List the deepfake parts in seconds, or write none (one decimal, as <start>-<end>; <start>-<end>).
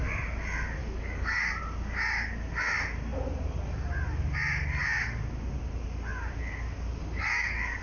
0.8-1.5; 7.0-7.8